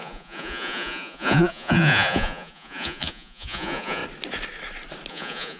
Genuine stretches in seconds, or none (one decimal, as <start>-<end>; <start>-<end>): 4.0-5.1